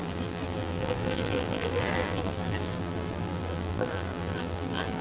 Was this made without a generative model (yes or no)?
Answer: no